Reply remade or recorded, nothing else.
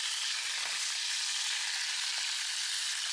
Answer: recorded